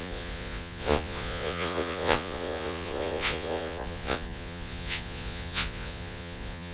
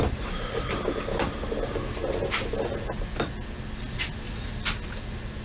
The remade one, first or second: first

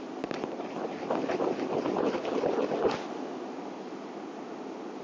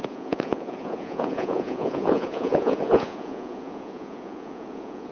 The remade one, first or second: second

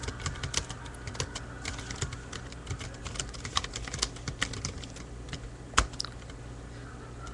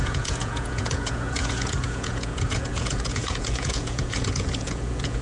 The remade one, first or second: second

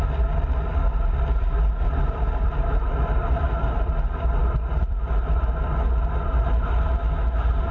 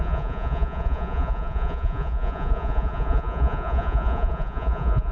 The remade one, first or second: second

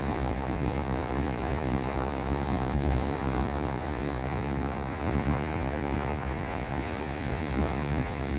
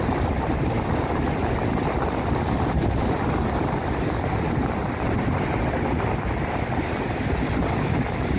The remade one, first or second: first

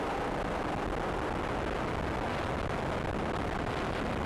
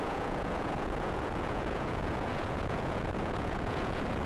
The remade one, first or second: second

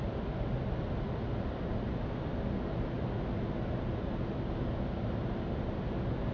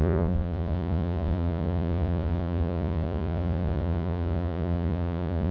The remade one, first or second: second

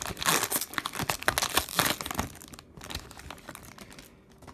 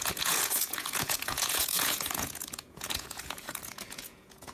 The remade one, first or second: second